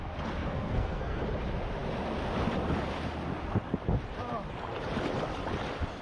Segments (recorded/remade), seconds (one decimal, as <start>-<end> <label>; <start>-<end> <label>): 0.0-0.4 recorded; 0.4-1.2 remade; 1.2-6.0 recorded

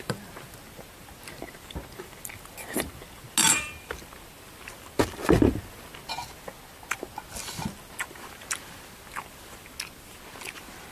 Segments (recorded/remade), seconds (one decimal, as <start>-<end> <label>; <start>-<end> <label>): 0.0-3.4 recorded; 3.4-3.9 remade; 3.9-10.9 recorded

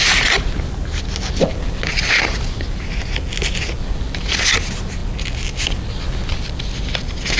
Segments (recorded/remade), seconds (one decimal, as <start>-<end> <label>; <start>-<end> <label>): 0.0-7.4 recorded